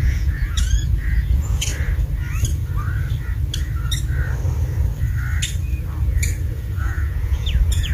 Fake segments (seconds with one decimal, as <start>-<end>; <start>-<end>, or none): 0.0-1.7; 6.4-7.9